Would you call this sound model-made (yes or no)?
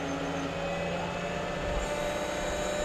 no